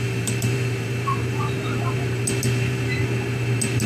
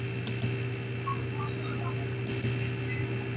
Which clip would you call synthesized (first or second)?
first